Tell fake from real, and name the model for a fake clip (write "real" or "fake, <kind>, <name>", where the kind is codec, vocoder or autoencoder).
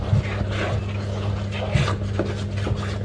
real